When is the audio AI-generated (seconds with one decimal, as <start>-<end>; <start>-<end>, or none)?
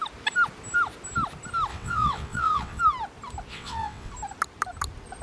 1.7-2.8; 3.5-4.1